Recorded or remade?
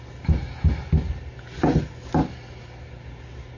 recorded